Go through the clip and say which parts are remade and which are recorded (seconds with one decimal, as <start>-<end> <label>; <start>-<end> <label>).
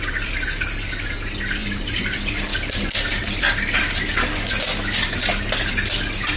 0.0-1.6 recorded; 1.6-2.3 remade; 2.3-3.2 recorded; 3.2-3.8 remade; 3.8-6.4 recorded